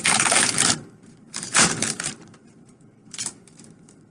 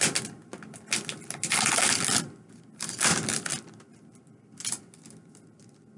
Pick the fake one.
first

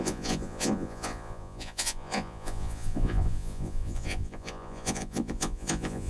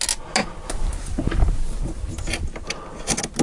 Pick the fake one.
first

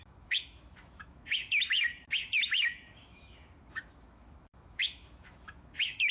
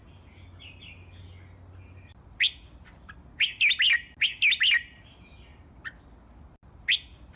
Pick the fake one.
first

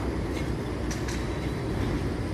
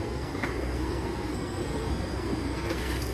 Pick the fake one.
second